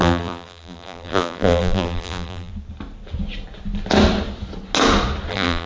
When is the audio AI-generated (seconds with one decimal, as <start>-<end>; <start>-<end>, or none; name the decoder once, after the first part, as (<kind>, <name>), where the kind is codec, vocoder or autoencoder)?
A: 0.0-2.5 (vocoder, BigVGAN v2); 5.3-5.7